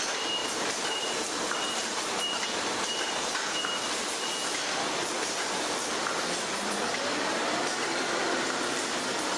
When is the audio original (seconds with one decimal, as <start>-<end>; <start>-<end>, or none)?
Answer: 0.0-0.4; 4.3-5.0; 6.2-9.4